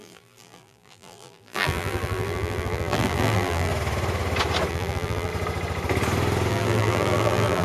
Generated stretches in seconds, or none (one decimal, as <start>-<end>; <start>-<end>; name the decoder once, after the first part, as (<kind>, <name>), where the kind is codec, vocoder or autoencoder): 0.0-3.7 (vocoder, BigVGAN v2); 4.7-5.3; 6.5-7.6